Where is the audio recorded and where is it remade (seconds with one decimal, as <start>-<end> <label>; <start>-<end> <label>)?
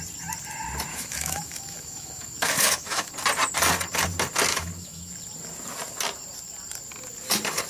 0.0-0.9 recorded; 0.9-3.1 remade; 3.1-4.5 recorded; 4.5-5.1 remade; 5.1-7.7 recorded